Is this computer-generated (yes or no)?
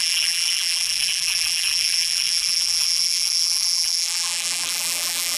yes